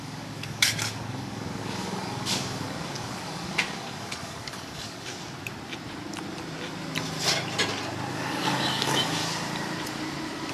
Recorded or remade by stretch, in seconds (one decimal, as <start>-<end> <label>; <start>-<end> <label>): 0.0-5.1 remade; 5.1-8.1 recorded; 8.1-9.2 remade; 9.2-10.5 recorded

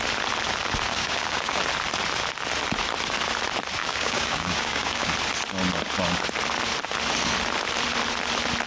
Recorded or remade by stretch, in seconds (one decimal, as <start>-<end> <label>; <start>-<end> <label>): 0.0-0.9 recorded; 0.9-1.6 remade; 1.6-3.8 recorded; 3.8-5.1 remade; 5.1-8.7 recorded

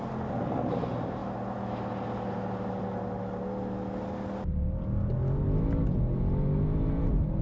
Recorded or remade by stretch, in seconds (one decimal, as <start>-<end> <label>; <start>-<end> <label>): 0.0-7.4 recorded

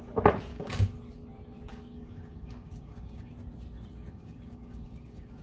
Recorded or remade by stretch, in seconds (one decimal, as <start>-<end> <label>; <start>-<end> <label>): 0.0-0.5 recorded; 0.5-1.0 remade; 1.0-1.7 recorded; 1.7-3.3 remade; 3.3-3.9 recorded; 3.9-5.4 remade

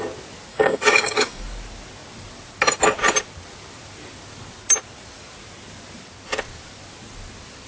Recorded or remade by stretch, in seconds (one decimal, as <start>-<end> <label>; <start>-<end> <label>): 0.0-0.5 recorded; 0.5-1.4 remade; 1.4-7.7 recorded

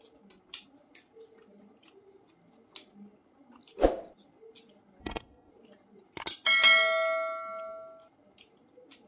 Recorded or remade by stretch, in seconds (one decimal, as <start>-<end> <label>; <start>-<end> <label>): 0.0-5.0 recorded; 5.0-5.5 remade; 5.5-9.1 recorded

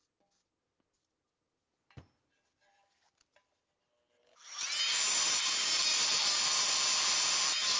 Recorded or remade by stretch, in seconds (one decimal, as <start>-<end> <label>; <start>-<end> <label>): 0.0-7.8 recorded